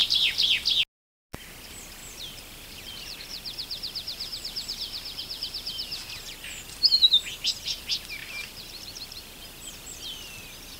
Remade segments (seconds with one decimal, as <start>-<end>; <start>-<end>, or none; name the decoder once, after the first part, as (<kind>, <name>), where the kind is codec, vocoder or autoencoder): 0.0-0.5 (vocoder, BigVGAN v2); 2.0-6.5; 8.2-9.4

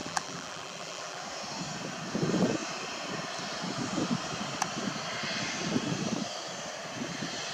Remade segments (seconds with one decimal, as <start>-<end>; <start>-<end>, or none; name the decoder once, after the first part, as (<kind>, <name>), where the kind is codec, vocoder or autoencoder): 0.0-1.2 (vocoder, BigVGAN v2)